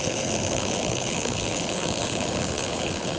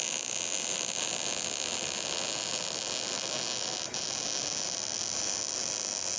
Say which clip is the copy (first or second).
first